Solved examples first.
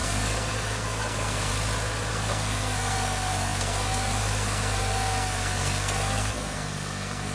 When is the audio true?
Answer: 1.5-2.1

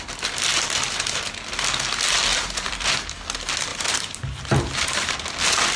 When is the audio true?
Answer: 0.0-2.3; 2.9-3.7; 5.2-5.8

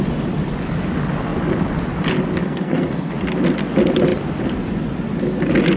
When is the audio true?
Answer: 0.0-2.4; 3.1-5.8

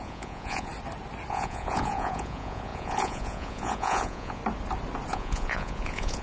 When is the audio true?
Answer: 0.7-1.3; 4.4-5.1